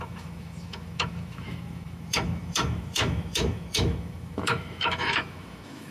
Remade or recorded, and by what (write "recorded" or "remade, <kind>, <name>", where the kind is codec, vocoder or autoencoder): remade, autoencoder, DAC-VAE